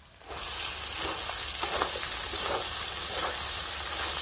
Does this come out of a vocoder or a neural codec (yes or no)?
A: no